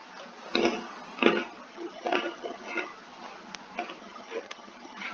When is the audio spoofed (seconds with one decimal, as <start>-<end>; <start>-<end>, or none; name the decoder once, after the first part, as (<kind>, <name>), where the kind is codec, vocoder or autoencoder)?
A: 1.7-2.9 (vocoder, HiFi-GAN); 4.0-5.1